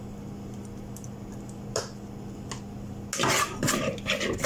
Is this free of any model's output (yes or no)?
yes